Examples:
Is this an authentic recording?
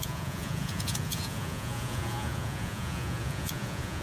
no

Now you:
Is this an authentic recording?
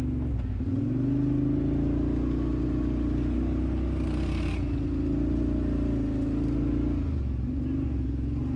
yes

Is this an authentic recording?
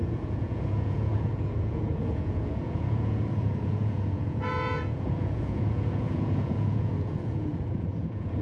no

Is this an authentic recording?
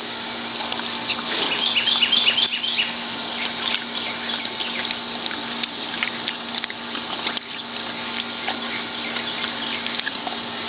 yes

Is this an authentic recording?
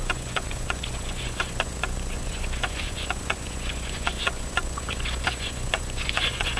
no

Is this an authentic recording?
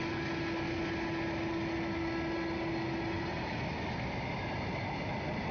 yes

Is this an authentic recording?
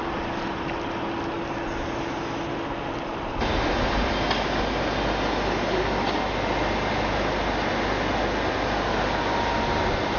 yes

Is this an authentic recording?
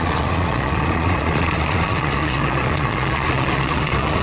no